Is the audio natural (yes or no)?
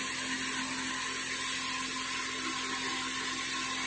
yes